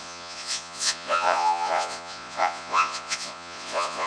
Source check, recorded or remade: remade